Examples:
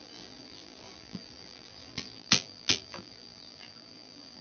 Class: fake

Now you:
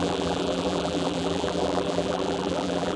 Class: fake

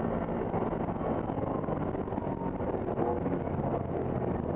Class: real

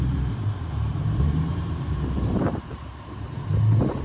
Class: fake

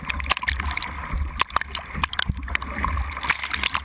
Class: real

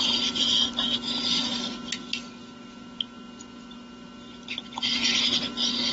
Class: real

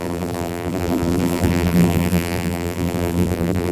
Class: fake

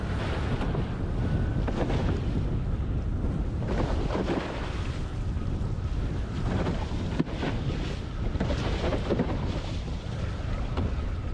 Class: real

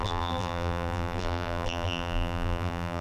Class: fake